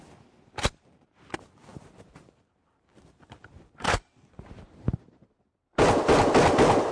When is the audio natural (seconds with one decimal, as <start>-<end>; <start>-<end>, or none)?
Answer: 0.0-1.7; 5.8-6.9